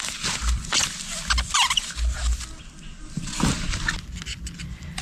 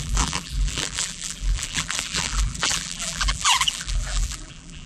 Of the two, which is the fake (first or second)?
second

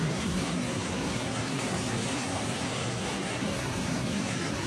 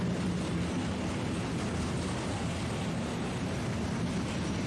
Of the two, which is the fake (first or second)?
first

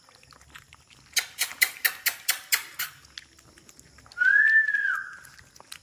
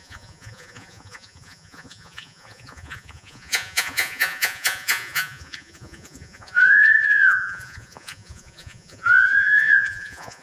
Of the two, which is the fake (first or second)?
second